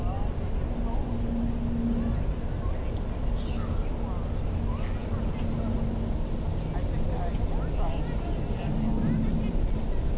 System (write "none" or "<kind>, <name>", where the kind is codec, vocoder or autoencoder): none